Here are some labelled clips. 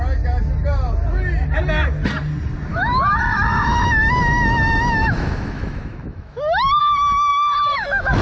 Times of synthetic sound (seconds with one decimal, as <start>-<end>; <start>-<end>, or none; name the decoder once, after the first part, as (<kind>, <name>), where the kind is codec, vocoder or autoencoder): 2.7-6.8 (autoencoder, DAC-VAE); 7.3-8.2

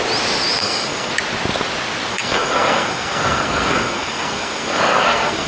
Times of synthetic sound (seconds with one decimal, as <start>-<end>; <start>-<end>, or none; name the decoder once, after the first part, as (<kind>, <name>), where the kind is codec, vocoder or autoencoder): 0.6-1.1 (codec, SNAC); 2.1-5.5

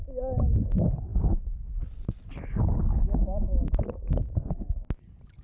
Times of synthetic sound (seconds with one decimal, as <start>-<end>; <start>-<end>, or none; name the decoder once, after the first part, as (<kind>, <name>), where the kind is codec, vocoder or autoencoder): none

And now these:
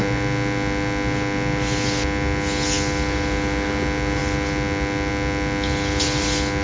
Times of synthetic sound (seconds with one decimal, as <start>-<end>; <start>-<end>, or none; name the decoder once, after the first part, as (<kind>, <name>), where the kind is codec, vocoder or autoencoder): none

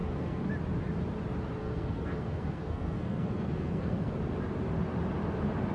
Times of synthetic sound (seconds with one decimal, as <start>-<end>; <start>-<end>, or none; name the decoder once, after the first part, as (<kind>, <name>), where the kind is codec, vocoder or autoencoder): 0.0-0.5 (codec, SNAC); 1.6-4.1

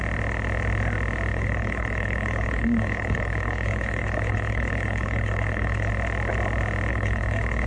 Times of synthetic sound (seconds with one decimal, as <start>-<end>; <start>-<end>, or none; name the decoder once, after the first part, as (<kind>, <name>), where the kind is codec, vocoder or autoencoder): 1.3-5.9 (codec, HILCodec); 6.9-7.7

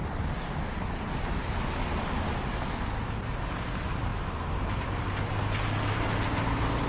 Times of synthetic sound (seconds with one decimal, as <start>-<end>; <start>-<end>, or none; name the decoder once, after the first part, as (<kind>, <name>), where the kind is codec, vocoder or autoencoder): none